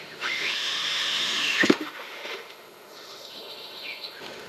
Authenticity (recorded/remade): remade